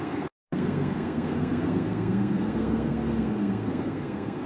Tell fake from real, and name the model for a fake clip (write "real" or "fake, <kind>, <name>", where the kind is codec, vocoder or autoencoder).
fake, codec, SNAC